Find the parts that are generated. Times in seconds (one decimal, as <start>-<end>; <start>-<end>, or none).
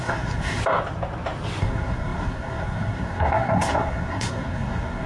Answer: 0.0-0.6; 1.6-5.1